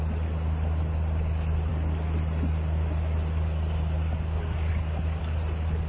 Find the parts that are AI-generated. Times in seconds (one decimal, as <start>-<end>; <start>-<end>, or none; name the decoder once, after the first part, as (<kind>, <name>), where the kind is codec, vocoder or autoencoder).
none